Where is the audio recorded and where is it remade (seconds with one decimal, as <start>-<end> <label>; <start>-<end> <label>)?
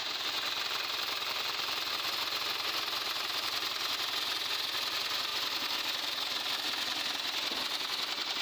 0.0-1.9 remade; 1.9-5.3 recorded; 5.3-5.8 remade; 5.8-8.4 recorded